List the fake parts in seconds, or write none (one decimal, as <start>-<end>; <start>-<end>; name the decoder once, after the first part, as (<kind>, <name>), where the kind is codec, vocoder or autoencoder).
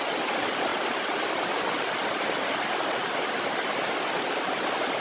none